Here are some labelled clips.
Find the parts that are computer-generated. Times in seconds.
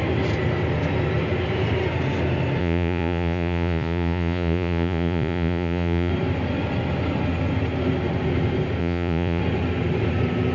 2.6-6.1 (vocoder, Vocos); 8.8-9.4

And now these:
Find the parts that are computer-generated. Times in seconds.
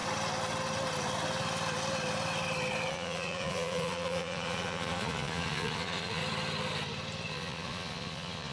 2.9-6.2 (vocoder, Vocos); 7.3-8.5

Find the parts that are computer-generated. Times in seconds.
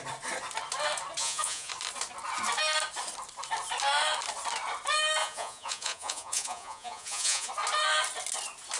1.2-1.7 (vocoder, Vocos); 5.2-7.5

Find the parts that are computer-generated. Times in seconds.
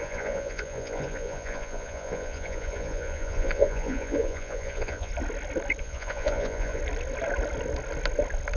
0.0-5.1 (vocoder, Vocos); 5.8-6.8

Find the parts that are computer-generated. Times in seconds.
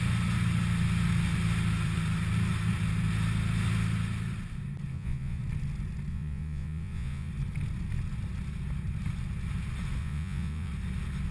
4.9-5.4 (vocoder, Vocos); 6.1-7.3; 10.0-10.7